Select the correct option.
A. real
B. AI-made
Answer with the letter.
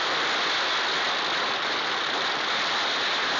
A